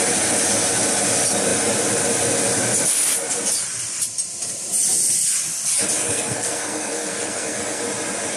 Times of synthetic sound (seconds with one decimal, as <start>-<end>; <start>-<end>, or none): 6.0-7.8